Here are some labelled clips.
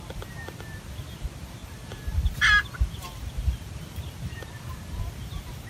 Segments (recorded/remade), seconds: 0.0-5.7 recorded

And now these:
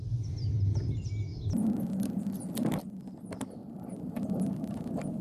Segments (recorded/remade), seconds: 0.0-1.3 recorded; 1.3-3.0 remade; 3.0-3.6 recorded; 3.6-4.6 remade; 4.6-5.2 recorded

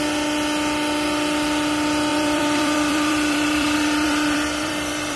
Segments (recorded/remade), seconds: 0.0-2.1 recorded; 2.1-5.2 remade

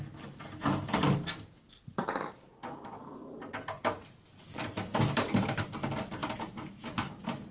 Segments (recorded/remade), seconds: 0.0-4.9 recorded; 4.9-5.6 remade; 5.6-6.2 recorded; 6.2-7.5 remade

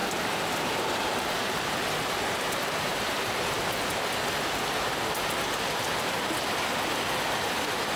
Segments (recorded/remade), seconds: 0.0-4.0 remade; 4.0-8.0 recorded